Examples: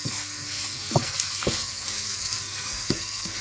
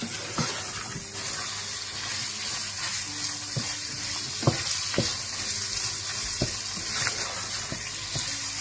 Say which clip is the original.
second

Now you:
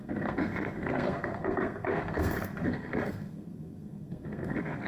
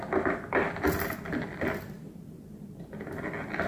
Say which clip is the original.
second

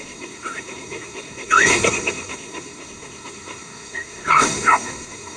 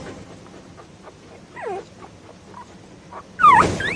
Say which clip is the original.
second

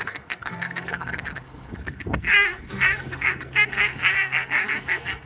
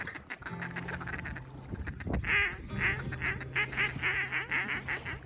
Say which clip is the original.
second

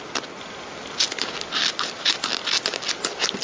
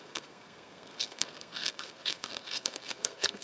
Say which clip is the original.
first